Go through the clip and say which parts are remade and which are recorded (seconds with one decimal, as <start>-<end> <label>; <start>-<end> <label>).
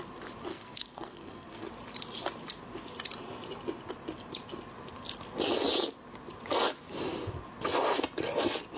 0.0-0.5 recorded; 0.5-1.7 remade; 1.7-8.8 recorded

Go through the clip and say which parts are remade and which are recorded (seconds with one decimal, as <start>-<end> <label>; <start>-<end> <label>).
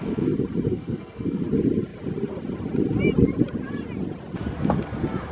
0.0-0.7 recorded; 0.7-1.4 remade; 1.4-5.3 recorded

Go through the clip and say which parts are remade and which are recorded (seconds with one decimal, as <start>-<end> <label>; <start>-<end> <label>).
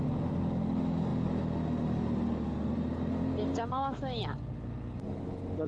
0.0-5.7 recorded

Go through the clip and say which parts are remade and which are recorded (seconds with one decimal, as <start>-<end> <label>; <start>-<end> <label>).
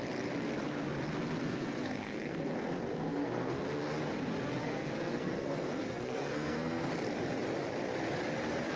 0.0-1.4 recorded; 1.4-2.5 remade; 2.5-3.0 recorded; 3.0-3.6 remade; 3.6-4.6 recorded; 4.6-6.9 remade; 6.9-8.8 recorded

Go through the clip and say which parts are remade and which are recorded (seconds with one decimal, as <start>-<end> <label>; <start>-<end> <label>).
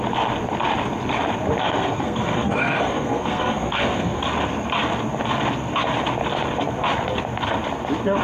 0.0-1.6 recorded; 1.6-4.2 remade; 4.2-8.2 recorded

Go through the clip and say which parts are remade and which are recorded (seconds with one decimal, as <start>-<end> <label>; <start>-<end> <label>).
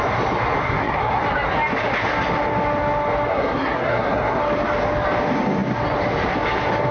0.0-0.6 recorded; 0.6-1.2 remade; 1.2-3.3 recorded; 3.3-4.4 remade; 4.4-6.9 recorded